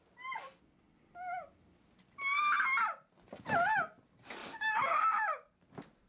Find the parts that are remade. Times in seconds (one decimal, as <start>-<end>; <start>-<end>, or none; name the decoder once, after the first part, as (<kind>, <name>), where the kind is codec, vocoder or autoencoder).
none